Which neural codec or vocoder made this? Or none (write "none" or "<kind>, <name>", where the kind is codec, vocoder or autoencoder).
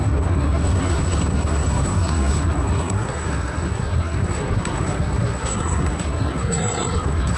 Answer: codec, SNAC